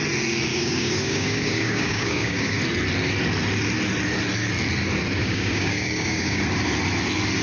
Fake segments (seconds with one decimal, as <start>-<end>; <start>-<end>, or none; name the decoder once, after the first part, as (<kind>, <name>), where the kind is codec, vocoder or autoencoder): 0.5-2.6 (codec, DAC); 5.2-6.4